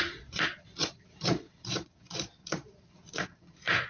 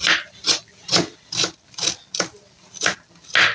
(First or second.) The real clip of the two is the second